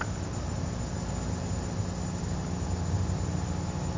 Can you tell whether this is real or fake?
real